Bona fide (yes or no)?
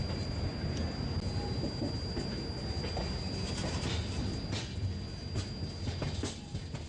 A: yes